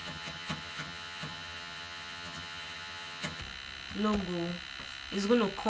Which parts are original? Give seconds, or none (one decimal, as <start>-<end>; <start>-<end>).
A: 3.4-5.7

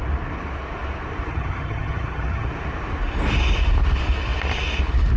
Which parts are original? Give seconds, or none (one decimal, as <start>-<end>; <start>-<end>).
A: 0.0-1.3; 2.5-5.2